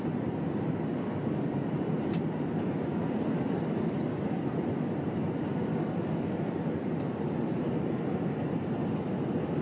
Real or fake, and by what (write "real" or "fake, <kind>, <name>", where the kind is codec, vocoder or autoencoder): fake, vocoder, BigVGAN v2